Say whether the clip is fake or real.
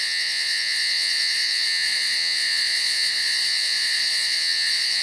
fake